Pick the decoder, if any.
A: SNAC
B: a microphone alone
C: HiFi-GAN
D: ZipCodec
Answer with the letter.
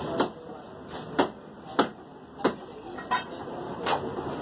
B